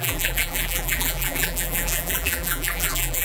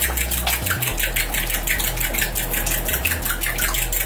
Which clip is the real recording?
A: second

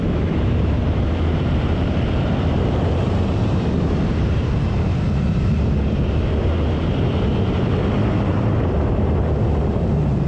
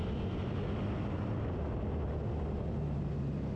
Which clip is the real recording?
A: second